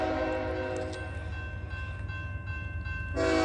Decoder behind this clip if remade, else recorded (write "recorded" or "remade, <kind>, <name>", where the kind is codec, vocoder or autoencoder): recorded